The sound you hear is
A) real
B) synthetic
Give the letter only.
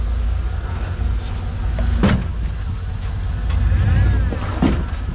A